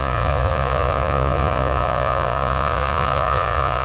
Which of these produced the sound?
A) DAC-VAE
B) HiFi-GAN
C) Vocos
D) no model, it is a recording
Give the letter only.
C